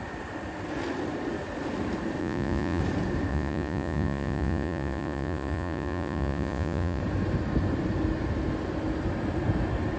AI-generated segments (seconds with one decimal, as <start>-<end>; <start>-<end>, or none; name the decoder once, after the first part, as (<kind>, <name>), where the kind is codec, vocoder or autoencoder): 2.2-2.8 (vocoder, Vocos); 3.3-7.0